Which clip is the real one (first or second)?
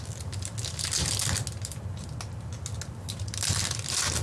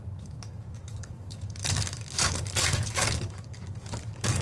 first